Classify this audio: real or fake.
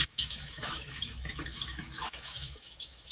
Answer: fake